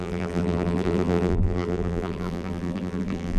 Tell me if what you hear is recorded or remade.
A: remade